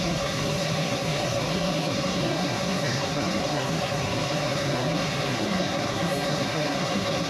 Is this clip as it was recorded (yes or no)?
no